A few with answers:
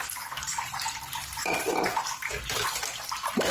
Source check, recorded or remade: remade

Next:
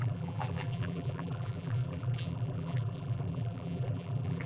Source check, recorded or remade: remade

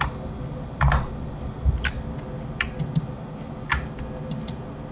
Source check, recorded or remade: recorded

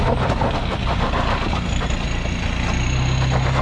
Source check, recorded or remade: recorded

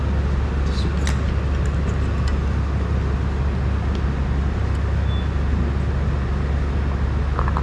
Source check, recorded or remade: recorded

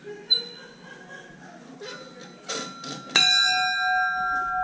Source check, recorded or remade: recorded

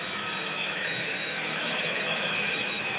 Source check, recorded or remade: remade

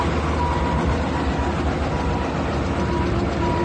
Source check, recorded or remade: recorded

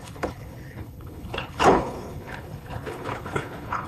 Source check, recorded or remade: remade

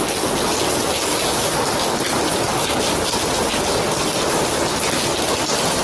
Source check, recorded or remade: recorded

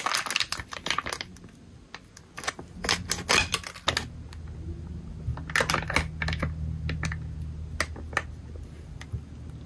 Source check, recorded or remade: recorded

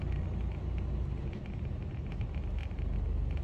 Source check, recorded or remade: recorded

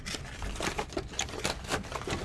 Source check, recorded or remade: recorded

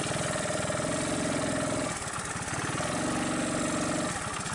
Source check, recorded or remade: recorded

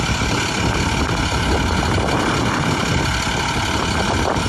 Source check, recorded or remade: recorded